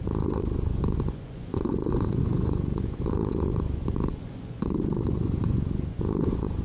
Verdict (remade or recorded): remade